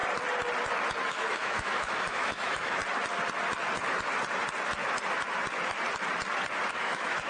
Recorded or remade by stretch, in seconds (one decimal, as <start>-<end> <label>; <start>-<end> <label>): 0.0-1.1 recorded; 1.1-2.8 remade; 2.8-6.7 recorded; 6.7-7.3 remade